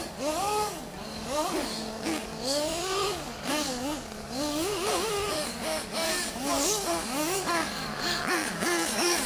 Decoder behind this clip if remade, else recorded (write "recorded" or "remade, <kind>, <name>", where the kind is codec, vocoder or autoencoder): remade, codec, DAC